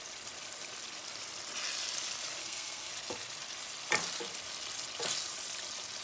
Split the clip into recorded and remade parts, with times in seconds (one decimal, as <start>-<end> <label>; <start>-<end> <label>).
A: 0.0-2.4 recorded; 2.4-2.9 remade; 2.9-6.0 recorded